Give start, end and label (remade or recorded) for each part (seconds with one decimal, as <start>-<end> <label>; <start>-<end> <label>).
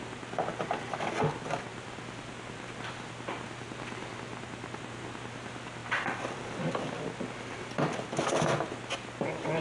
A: 0.0-5.8 recorded; 5.8-6.7 remade; 6.7-9.6 recorded